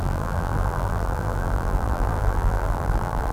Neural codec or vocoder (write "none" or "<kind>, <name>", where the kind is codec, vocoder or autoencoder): vocoder, BigVGAN v2